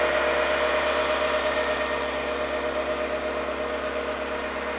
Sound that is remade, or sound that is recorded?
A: recorded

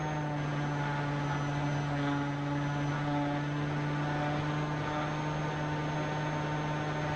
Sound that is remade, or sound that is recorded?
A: recorded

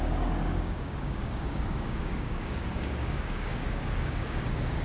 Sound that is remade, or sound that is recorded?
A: remade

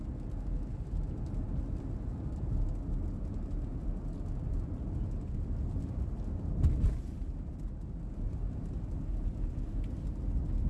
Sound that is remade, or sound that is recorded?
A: recorded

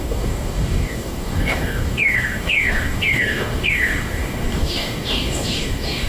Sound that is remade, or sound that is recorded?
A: remade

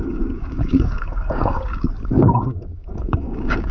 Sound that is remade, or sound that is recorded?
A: remade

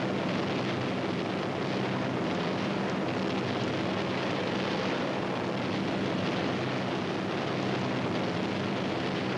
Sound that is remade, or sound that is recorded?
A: recorded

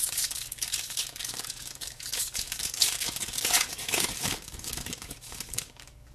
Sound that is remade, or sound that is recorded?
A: remade